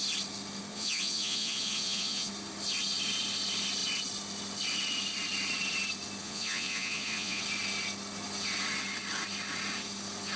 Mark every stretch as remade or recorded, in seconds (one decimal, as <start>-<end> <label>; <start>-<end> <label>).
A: 0.0-0.7 recorded; 0.7-2.3 remade; 2.3-6.2 recorded; 6.2-7.4 remade; 7.4-10.4 recorded